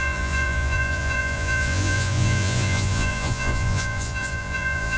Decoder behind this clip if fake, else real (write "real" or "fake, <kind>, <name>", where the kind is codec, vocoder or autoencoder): fake, vocoder, Vocos